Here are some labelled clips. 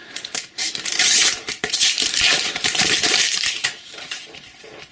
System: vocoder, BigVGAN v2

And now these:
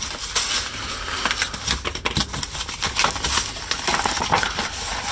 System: none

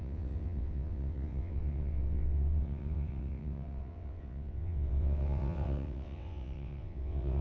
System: vocoder, WaveNeXt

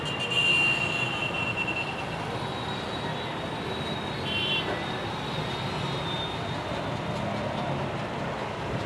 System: none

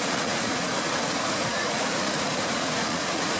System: vocoder, Vocos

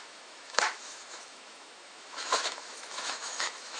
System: autoencoder, DAC-VAE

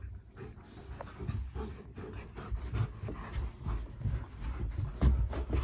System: none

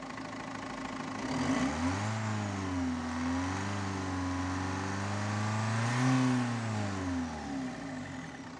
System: none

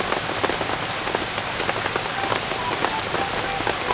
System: none